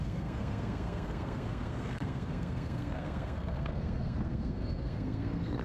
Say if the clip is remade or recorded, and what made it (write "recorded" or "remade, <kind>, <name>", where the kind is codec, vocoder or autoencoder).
remade, codec, SNAC